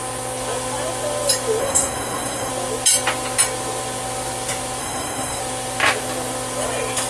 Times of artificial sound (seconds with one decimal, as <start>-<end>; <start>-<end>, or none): 1.6-2.5; 4.8-5.4